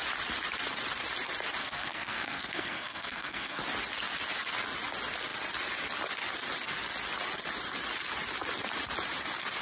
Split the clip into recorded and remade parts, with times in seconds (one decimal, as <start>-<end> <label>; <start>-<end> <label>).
0.0-1.6 recorded; 1.6-3.6 remade; 3.6-9.6 recorded